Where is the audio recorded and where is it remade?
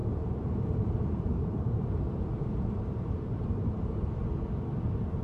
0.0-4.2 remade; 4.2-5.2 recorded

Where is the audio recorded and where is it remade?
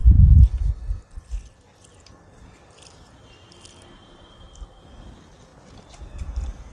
0.0-6.7 recorded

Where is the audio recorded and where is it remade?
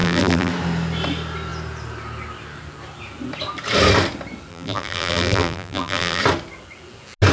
0.0-0.5 remade; 0.5-4.5 recorded; 4.5-6.2 remade; 6.2-7.3 recorded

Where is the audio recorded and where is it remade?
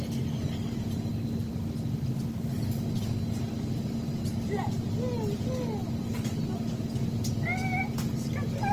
0.0-1.5 recorded; 1.5-4.5 remade; 4.5-8.7 recorded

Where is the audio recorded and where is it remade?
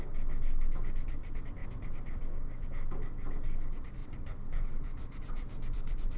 0.0-1.6 recorded; 1.6-2.2 remade; 2.2-4.0 recorded; 4.0-6.2 remade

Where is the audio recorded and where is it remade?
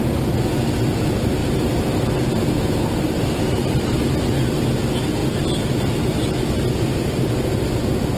0.0-1.4 recorded; 1.4-3.7 remade; 3.7-8.2 recorded